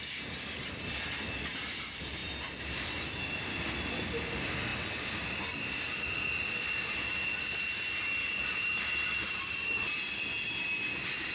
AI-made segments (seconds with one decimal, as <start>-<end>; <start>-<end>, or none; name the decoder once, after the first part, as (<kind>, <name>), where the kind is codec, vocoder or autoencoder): 8.4-10.0 (vocoder, BigVGAN v2)